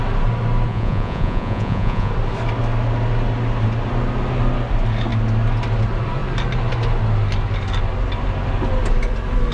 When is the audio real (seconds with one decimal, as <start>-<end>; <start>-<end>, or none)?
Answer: 0.0-0.7; 2.1-9.5